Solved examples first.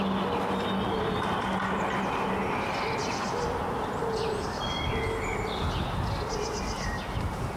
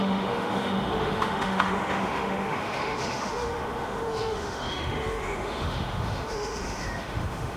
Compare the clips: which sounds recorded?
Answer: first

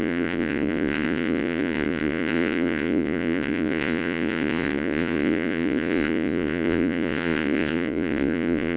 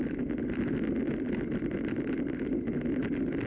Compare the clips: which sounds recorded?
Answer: second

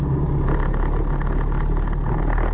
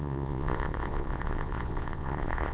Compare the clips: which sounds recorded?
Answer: first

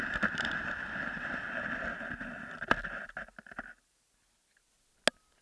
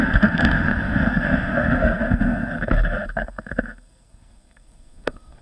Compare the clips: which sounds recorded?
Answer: first